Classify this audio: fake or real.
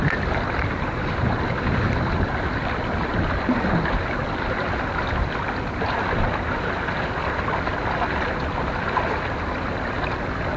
real